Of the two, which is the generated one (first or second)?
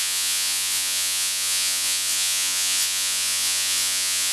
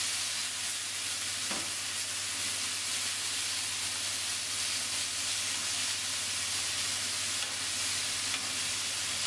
first